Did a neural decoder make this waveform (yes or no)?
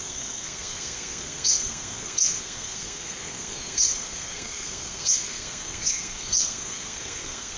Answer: yes